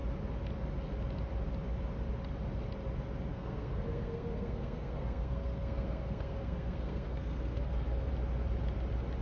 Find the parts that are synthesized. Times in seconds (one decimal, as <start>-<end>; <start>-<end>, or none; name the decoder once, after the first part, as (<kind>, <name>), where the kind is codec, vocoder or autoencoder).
3.3-8.1 (codec, SNAC)